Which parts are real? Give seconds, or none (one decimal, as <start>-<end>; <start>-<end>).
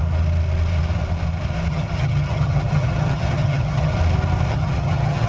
0.0-1.7; 3.9-4.5